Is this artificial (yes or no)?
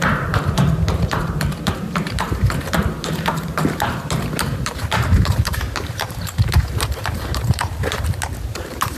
yes